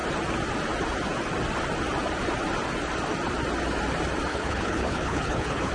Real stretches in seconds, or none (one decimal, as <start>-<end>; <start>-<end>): 0.0-4.3